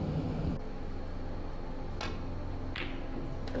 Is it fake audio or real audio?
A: real